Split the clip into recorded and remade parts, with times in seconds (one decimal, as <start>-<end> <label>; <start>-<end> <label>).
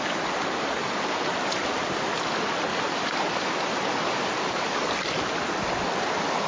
0.0-0.8 recorded; 0.8-2.2 remade; 2.2-2.7 recorded; 2.7-5.2 remade; 5.2-6.5 recorded